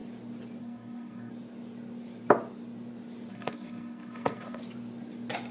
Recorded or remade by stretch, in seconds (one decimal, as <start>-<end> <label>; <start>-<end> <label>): 0.0-0.6 recorded; 0.6-1.3 remade; 1.3-3.3 recorded; 3.3-4.6 remade; 4.6-5.5 recorded